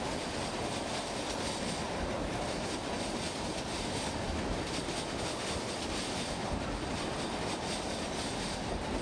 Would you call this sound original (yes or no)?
yes